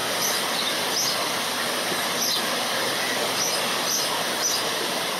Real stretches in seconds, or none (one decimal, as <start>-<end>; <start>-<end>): 0.0-5.2